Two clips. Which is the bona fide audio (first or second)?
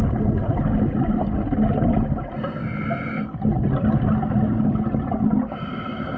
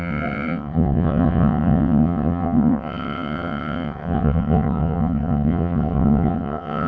first